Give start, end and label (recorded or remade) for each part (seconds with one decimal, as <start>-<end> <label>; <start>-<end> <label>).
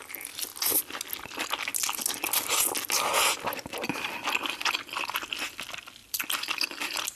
0.0-6.0 recorded; 6.0-7.2 remade